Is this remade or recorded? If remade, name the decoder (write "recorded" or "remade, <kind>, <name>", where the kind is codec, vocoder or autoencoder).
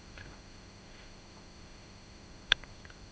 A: remade, autoencoder, DAC-VAE